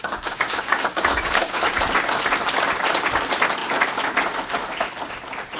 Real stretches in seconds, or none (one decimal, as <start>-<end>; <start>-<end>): 1.7-5.6